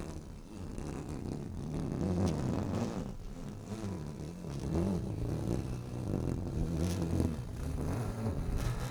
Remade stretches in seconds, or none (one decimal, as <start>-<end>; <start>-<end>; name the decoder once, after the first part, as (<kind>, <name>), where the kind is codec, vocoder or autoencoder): 7.5-8.3 (vocoder, BigVGAN v2)